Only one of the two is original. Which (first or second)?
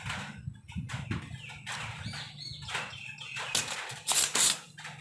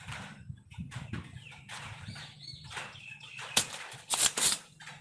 first